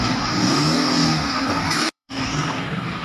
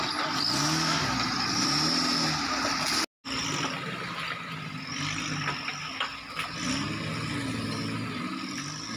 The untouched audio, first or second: second